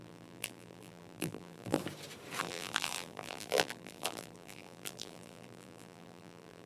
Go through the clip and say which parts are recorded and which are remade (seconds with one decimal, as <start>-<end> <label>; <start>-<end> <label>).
0.0-1.8 remade; 1.8-2.4 recorded; 2.4-6.7 remade